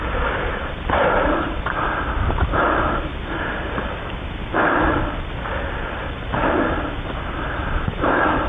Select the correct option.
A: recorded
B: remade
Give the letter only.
B